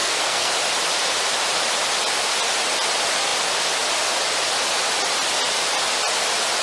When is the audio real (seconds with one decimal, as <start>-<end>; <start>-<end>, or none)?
0.5-6.6

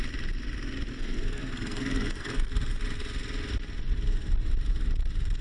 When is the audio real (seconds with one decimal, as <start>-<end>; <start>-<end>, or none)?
0.0-0.9; 2.5-5.4

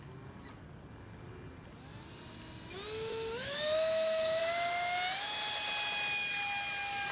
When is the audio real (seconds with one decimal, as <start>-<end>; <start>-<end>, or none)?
0.0-3.1; 4.4-7.1

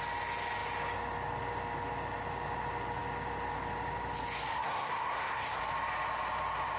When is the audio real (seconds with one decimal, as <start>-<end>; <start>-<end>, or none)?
0.0-4.5; 5.6-6.8